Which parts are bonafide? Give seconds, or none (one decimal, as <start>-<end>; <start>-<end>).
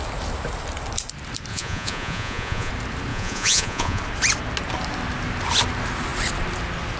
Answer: 0.0-1.5; 2.7-3.1; 4.0-7.0